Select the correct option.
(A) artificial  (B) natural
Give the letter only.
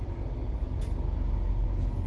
B